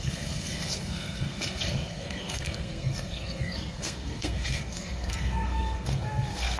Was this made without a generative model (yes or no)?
no